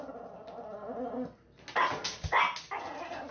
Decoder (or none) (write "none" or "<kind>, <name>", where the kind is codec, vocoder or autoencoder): none